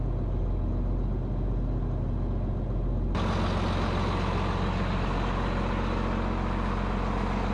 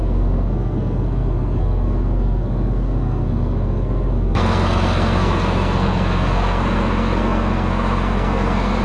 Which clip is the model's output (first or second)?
second